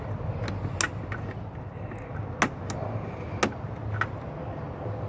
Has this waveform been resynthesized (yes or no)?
no